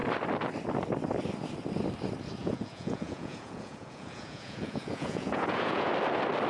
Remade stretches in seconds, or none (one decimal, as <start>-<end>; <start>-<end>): 2.4-5.9